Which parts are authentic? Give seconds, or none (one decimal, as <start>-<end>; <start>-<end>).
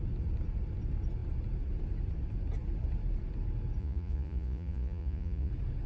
0.0-3.8; 5.5-5.9